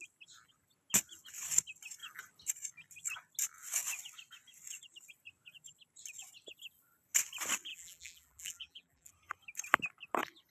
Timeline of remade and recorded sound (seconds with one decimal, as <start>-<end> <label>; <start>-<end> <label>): 0.0-7.7 recorded; 7.7-9.1 remade; 9.1-10.5 recorded